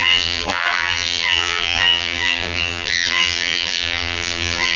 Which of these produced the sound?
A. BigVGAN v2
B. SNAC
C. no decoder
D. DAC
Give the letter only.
A